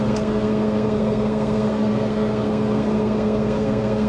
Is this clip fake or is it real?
fake